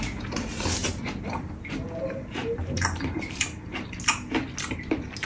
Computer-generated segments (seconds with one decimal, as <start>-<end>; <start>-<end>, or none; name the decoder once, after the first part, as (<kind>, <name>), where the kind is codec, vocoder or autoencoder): 0.8-3.9 (vocoder, BigVGAN v2)